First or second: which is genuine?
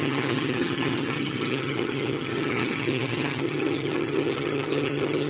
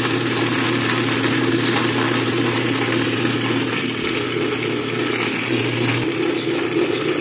second